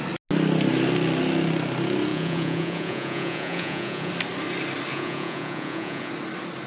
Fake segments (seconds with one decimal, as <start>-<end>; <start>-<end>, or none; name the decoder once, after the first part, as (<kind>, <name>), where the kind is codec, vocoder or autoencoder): 2.1-4.1 (vocoder, Vocos); 4.9-6.1